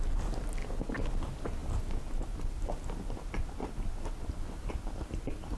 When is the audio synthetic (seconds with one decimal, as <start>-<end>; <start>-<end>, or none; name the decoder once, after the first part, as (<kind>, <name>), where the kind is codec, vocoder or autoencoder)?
none